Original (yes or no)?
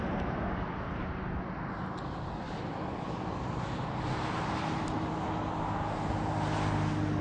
yes